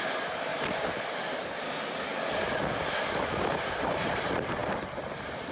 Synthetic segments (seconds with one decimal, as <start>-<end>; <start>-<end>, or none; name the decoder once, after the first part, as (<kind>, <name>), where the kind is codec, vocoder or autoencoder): 0.0-0.5 (vocoder, BigVGAN v2); 3.8-4.6; 5.1-5.5

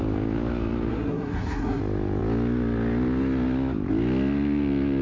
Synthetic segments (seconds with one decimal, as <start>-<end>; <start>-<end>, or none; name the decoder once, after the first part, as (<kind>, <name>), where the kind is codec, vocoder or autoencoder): 0.9-1.8 (codec, SNAC)

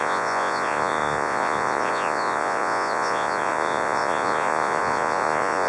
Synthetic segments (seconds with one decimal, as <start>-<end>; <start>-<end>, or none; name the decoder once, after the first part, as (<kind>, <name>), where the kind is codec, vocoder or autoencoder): 0.0-5.7 (vocoder, Vocos)